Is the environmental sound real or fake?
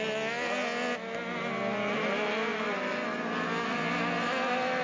real